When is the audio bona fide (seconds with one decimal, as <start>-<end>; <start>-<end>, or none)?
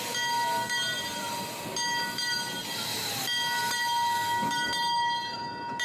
0.0-5.8